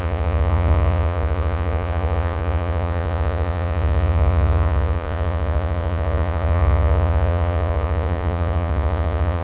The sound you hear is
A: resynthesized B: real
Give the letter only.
A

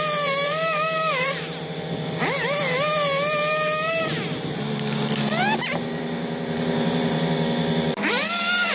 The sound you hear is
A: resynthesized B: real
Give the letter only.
A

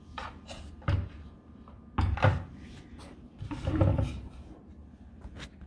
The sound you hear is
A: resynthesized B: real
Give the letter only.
B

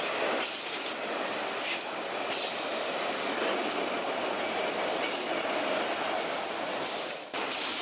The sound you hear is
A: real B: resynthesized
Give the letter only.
A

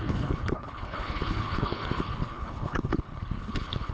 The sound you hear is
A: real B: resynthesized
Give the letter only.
B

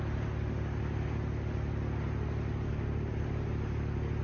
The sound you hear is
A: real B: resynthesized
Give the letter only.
A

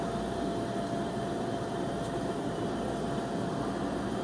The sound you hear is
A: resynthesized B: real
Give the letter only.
B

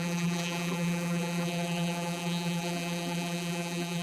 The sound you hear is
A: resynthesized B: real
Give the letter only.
A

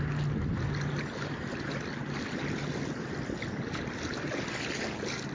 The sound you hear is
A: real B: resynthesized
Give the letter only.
A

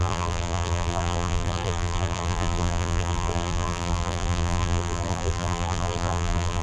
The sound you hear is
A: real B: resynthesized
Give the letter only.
B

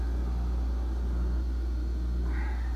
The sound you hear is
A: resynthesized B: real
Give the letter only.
B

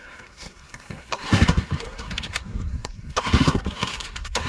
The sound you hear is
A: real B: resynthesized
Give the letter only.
B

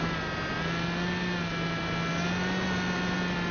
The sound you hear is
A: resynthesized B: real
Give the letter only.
B